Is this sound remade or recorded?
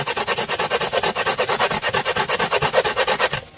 recorded